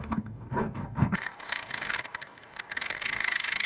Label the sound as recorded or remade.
remade